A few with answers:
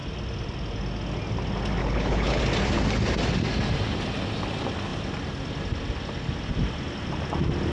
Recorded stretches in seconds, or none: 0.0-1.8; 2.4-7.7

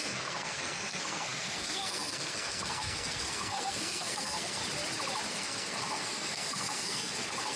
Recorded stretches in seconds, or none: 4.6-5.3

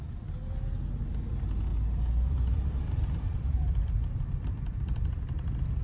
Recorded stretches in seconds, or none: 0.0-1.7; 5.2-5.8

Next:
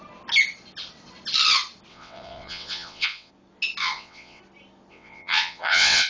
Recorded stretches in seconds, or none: 0.0-1.9; 3.3-3.8; 4.4-4.9

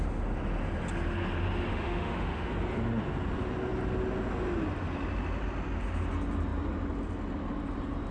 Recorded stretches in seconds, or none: 0.0-1.7; 2.5-8.1

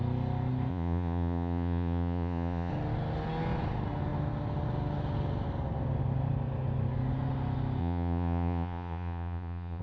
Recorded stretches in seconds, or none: 0.0-0.7; 2.7-7.8